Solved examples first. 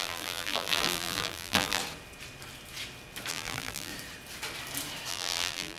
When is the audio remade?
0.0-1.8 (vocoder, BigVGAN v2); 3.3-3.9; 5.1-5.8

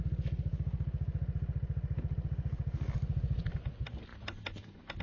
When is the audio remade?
4.1-5.0 (vocoder, BigVGAN v2)

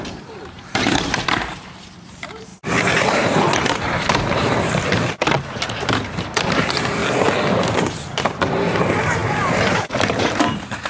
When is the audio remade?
0.0-7.0 (vocoder, BigVGAN v2); 7.5-10.9

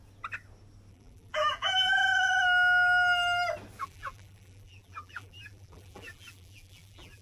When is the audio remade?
0.9-2.0 (vocoder, BigVGAN v2); 3.8-7.2

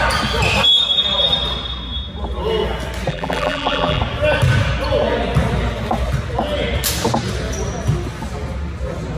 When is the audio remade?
3.1-4.0 (vocoder, BigVGAN v2)

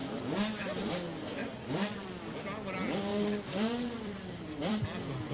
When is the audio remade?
0.0-0.9 (vocoder, BigVGAN v2); 1.4-2.2; 3.1-4.8